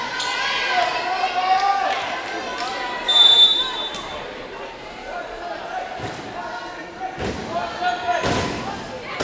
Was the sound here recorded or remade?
recorded